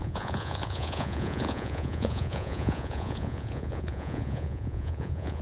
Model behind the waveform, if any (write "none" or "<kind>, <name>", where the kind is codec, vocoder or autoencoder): vocoder, Vocos